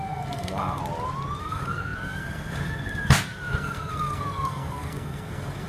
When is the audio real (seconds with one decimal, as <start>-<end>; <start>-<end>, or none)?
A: 0.8-1.4